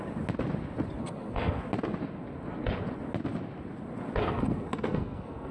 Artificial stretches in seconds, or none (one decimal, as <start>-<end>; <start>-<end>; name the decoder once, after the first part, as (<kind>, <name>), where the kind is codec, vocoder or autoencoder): 1.0-1.6 (codec, SNAC); 4.2-5.5